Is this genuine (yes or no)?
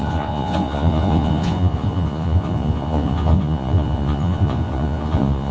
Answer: no